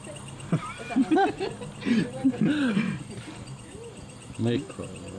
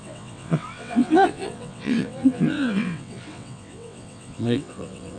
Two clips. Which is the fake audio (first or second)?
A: second